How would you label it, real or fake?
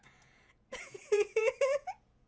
fake